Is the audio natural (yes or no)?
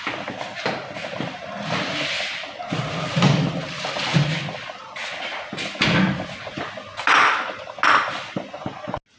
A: yes